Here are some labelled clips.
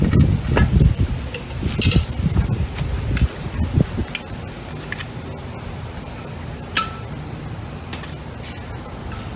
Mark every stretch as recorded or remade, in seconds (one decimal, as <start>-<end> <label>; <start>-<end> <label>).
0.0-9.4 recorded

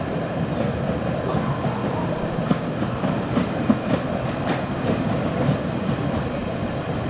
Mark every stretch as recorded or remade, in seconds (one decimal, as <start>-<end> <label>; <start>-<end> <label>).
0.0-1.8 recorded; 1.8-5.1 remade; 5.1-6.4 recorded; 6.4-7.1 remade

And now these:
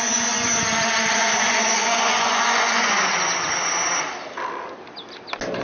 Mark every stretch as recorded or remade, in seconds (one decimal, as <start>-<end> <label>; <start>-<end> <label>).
0.0-0.5 remade; 0.5-1.1 recorded; 1.1-3.1 remade; 3.1-5.6 recorded

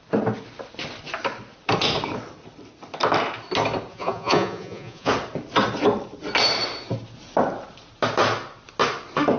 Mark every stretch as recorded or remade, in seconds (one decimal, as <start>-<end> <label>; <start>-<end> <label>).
0.0-3.9 recorded; 3.9-5.1 remade; 5.1-9.4 recorded

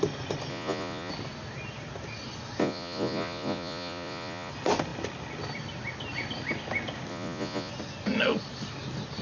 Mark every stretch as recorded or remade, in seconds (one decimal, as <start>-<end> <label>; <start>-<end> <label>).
0.0-0.5 recorded; 0.5-1.1 remade; 1.1-2.6 recorded; 2.6-4.5 remade; 4.5-7.1 recorded; 7.1-7.7 remade; 7.7-9.2 recorded

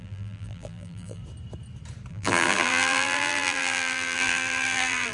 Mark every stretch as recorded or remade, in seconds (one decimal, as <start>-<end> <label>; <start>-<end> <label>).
0.0-1.2 remade; 1.2-2.1 recorded; 2.1-5.1 remade

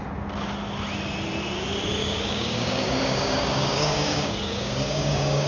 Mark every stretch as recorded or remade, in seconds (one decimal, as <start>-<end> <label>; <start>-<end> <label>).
0.0-2.0 recorded; 2.0-5.5 remade

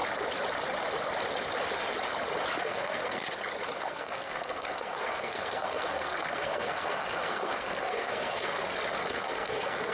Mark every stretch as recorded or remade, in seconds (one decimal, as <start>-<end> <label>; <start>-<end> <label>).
0.0-2.6 recorded; 2.6-3.2 remade; 3.2-3.8 recorded; 3.8-8.6 remade; 8.6-9.1 recorded; 9.1-9.9 remade